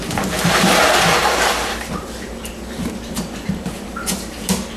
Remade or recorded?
remade